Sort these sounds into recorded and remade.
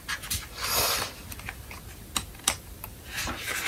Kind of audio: recorded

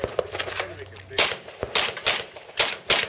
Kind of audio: recorded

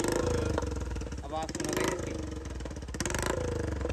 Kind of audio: recorded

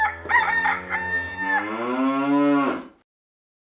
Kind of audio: recorded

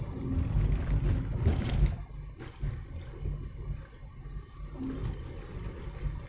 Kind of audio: recorded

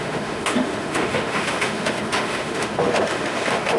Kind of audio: remade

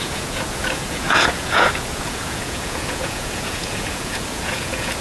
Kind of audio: remade